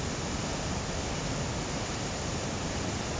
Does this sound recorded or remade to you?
recorded